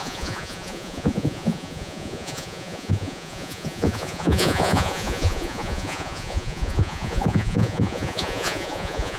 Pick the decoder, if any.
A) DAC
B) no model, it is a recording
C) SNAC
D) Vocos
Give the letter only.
D